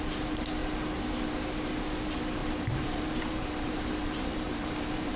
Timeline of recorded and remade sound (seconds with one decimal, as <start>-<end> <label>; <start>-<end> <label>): 0.0-2.4 recorded; 2.4-5.2 remade